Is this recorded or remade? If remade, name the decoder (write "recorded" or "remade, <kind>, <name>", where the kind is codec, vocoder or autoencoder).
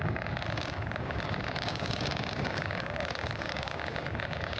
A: remade, codec, DAC